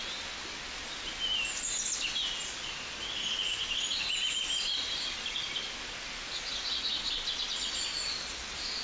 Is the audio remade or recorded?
recorded